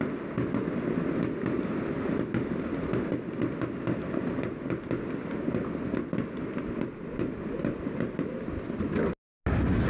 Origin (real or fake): real